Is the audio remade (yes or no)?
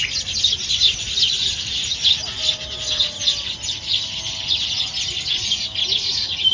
no